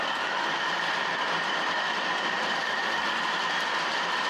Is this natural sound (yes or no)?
no